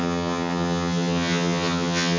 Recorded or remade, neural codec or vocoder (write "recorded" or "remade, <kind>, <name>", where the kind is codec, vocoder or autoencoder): remade, vocoder, HiFi-GAN